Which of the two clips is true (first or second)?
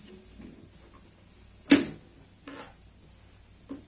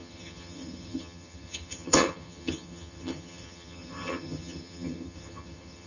first